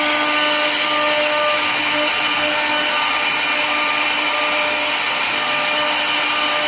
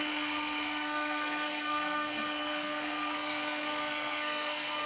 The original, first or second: first